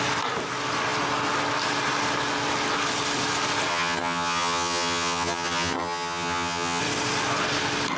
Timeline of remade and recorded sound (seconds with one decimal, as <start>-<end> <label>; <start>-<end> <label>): 0.0-3.7 recorded; 3.7-6.8 remade; 6.8-8.0 recorded